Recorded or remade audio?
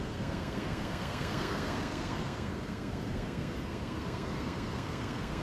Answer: remade